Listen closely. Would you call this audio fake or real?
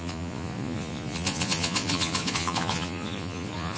fake